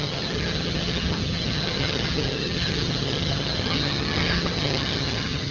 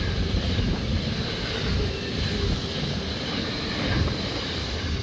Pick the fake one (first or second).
first